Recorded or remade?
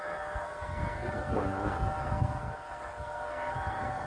remade